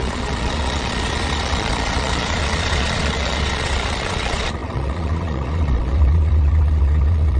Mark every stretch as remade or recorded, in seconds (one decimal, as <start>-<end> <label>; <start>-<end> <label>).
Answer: 0.0-7.4 remade